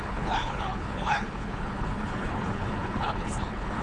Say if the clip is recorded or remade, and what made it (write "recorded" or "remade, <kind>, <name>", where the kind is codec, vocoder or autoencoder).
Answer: remade, codec, HILCodec